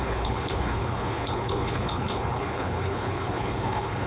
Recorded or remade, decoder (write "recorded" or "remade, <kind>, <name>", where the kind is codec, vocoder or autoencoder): remade, codec, HILCodec